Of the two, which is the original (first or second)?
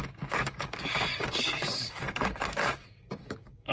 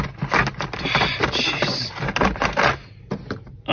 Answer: second